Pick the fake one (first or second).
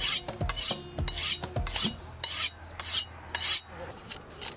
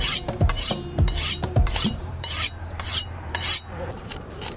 second